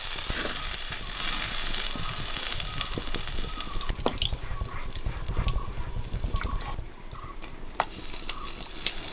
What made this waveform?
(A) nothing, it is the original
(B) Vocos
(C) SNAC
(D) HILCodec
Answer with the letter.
A